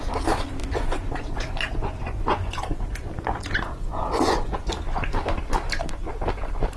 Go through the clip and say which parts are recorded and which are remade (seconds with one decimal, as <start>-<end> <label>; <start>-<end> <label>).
0.0-0.6 recorded; 0.6-4.7 remade; 4.7-6.8 recorded